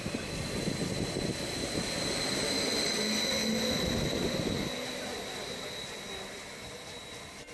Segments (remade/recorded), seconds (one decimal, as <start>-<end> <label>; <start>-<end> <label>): 0.0-7.5 recorded